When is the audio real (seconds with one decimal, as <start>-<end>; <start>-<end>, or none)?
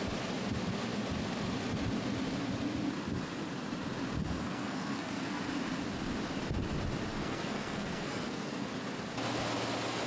0.0-4.2; 5.4-7.1; 8.7-10.1